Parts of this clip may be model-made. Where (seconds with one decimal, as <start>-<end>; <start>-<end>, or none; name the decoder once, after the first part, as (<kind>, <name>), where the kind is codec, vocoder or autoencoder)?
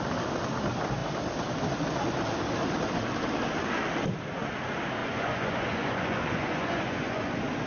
5.0-7.3 (vocoder, Vocos)